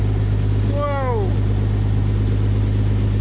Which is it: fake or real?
real